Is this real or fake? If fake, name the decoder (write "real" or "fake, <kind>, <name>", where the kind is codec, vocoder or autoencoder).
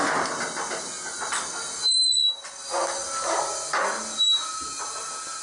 real